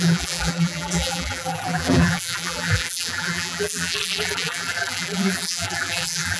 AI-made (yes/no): yes